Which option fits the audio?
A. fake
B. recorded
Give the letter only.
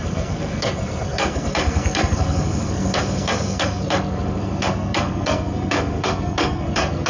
A